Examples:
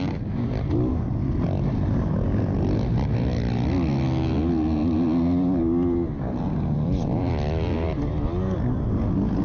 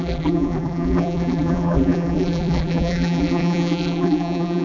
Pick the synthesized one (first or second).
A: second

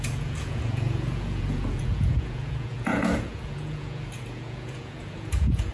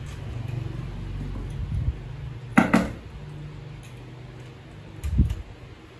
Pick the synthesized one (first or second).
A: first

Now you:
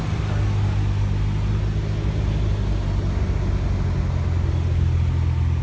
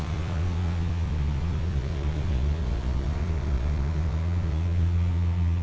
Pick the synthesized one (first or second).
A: second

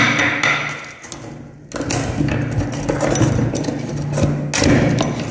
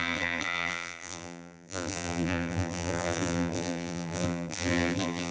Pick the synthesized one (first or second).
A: second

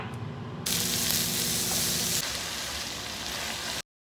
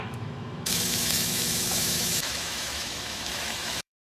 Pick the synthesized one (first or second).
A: second